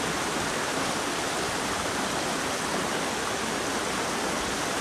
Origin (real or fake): real